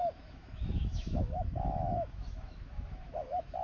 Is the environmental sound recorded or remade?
remade